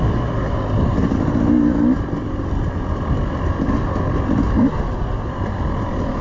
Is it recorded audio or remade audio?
recorded